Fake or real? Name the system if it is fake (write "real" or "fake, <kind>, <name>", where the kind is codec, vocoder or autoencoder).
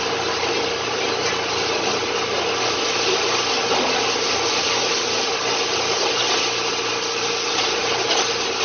real